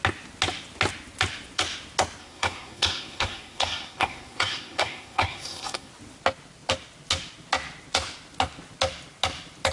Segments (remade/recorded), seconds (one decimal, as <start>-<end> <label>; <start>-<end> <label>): 0.0-2.2 recorded; 2.2-5.9 remade; 5.9-9.7 recorded